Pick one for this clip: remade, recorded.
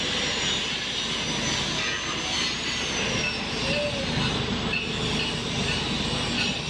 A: recorded